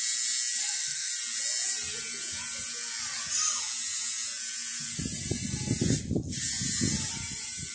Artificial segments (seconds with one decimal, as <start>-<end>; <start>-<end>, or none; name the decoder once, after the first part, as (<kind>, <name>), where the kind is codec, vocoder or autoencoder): 0.6-1.1 (codec, SNAC)